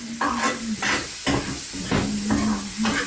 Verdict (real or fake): real